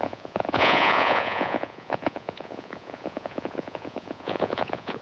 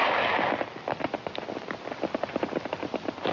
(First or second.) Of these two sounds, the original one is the second